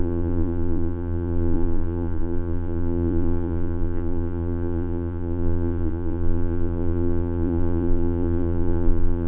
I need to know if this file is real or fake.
fake